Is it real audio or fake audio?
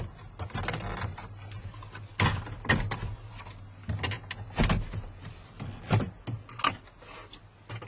real